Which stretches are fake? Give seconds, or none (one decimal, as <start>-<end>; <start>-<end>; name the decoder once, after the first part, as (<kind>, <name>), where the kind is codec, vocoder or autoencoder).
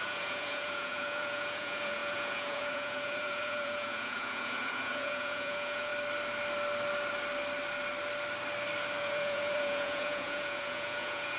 0.0-5.9 (vocoder, Vocos); 9.0-11.4